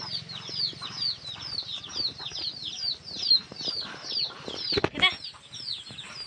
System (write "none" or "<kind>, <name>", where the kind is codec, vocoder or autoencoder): none